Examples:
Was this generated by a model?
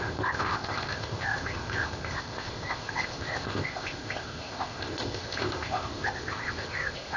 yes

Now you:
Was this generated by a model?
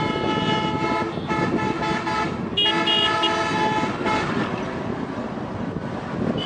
no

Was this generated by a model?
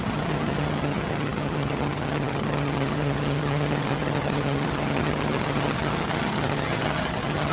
yes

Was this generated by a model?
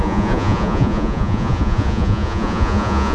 yes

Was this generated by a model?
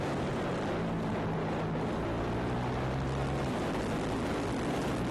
no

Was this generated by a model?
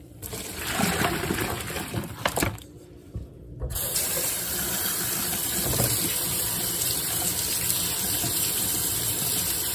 yes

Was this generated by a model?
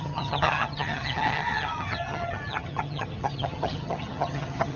yes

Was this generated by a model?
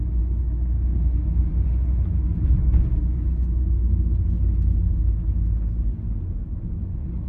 no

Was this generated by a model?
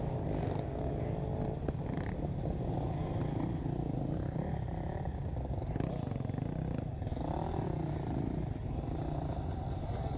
no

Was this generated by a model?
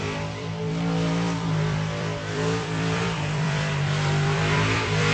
yes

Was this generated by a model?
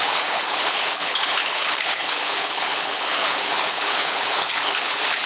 yes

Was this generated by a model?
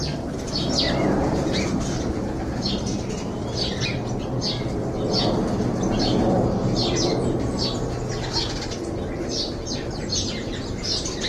no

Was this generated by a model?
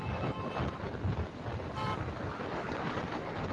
yes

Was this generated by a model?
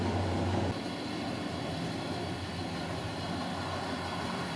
no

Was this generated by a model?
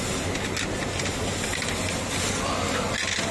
no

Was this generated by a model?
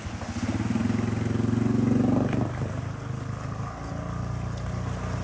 no